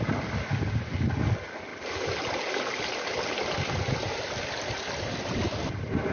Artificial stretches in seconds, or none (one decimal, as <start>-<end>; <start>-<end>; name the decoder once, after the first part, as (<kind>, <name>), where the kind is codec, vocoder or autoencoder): none